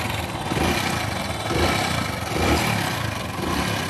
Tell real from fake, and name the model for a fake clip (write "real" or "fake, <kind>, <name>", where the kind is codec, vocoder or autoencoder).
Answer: real